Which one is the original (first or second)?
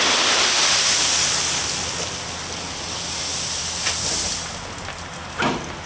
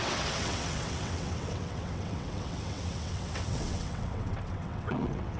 first